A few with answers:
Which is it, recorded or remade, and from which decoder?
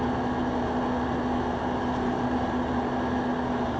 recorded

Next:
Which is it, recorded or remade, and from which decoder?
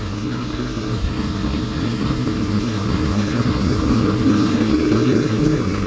remade, codec, SNAC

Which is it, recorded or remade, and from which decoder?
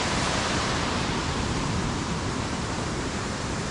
remade, vocoder, BigVGAN v2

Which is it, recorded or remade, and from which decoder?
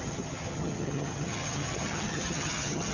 remade, vocoder, HiFi-GAN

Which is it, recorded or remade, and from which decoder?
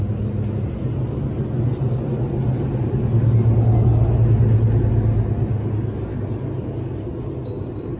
recorded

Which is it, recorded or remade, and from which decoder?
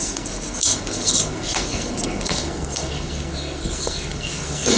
remade, codec, SNAC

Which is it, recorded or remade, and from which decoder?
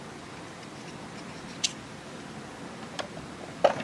recorded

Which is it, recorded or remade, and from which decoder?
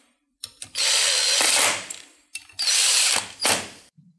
remade, vocoder, BigVGAN v2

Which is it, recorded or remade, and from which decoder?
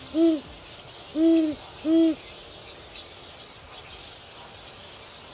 recorded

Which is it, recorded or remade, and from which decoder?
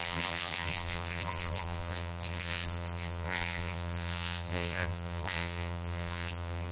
remade, vocoder, BigVGAN v2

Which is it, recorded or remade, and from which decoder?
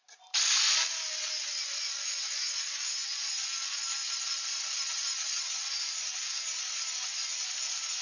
recorded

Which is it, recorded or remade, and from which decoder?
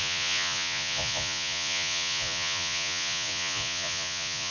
remade, vocoder, Vocos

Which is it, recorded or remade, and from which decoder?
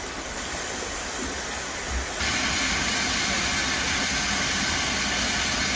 recorded